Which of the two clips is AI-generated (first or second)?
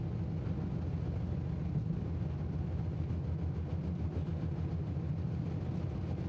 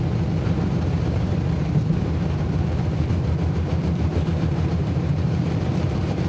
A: second